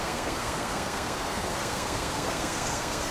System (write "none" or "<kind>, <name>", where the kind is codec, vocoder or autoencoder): codec, SNAC